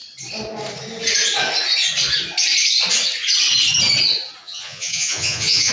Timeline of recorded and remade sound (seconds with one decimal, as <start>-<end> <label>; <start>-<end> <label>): 0.0-4.4 recorded; 4.4-5.7 remade